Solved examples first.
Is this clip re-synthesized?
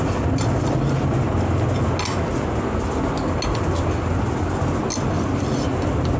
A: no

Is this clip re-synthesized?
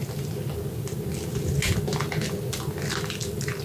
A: no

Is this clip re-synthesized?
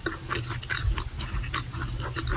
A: no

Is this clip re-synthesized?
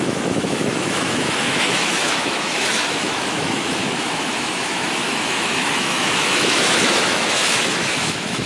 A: yes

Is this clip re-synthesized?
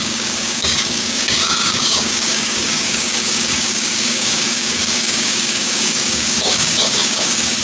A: yes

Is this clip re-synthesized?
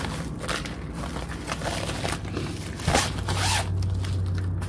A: no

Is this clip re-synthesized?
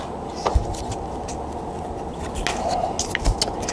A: no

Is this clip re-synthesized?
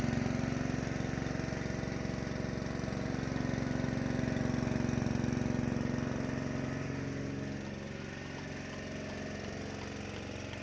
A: no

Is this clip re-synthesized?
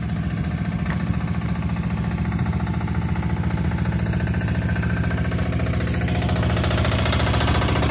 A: no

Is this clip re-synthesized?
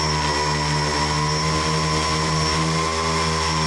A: no